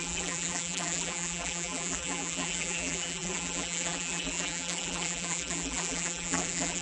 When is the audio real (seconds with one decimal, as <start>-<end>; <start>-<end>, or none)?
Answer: none